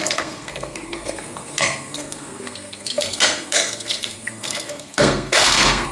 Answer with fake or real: fake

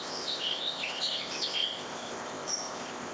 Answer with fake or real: fake